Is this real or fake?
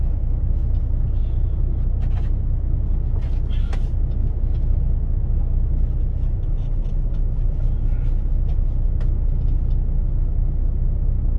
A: real